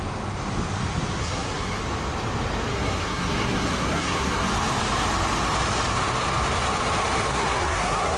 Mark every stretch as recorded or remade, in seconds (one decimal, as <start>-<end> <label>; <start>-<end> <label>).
0.0-1.2 recorded; 1.2-1.8 remade; 1.8-2.7 recorded; 2.7-4.5 remade; 4.5-7.3 recorded; 7.3-8.2 remade